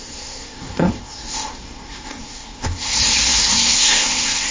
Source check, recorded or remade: remade